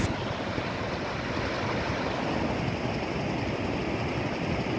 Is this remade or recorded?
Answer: recorded